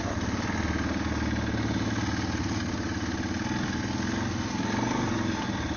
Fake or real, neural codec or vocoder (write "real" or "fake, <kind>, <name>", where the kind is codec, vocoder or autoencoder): real